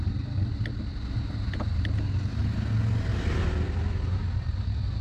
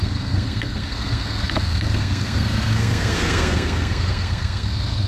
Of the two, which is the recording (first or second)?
first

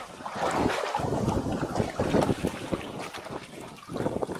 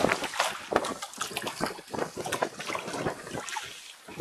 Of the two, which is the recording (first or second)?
second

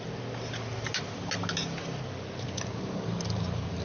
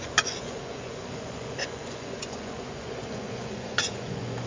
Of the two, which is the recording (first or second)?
first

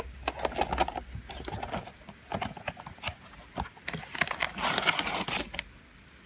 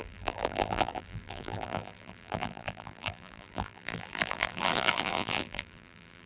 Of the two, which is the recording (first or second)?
first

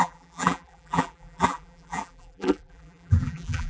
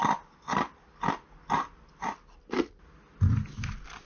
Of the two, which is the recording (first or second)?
second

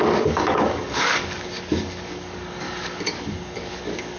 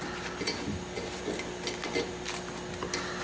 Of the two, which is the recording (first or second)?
second